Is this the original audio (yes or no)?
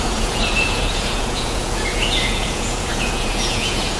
no